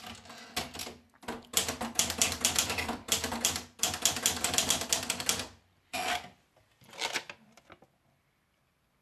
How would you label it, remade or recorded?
recorded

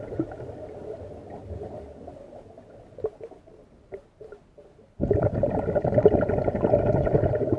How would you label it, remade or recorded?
recorded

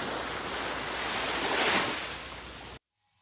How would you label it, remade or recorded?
recorded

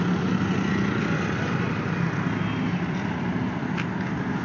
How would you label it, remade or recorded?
recorded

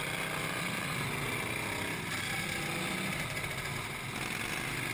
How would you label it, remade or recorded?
recorded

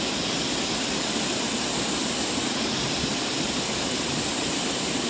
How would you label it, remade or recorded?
remade